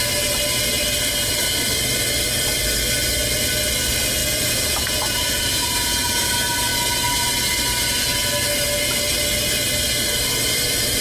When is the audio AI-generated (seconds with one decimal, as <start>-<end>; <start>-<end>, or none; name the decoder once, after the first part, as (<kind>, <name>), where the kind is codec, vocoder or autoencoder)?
4.2-6.3 (vocoder, Vocos)